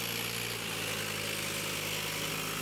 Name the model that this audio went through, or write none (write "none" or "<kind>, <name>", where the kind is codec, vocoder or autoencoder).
none